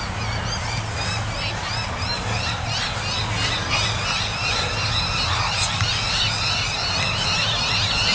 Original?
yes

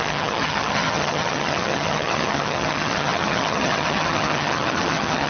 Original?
no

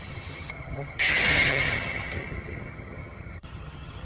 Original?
no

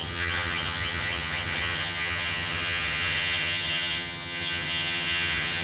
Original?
no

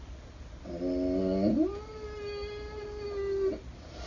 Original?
yes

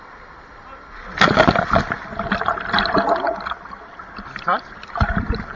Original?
yes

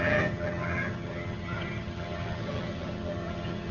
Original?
no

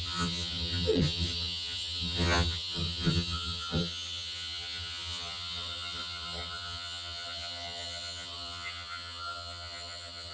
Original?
no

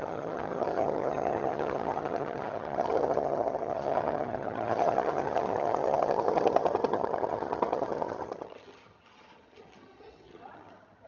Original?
no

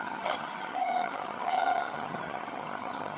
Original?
no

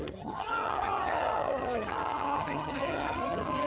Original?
no